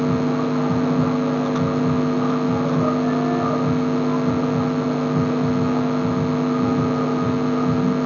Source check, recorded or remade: recorded